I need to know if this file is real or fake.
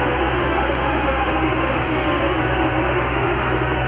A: fake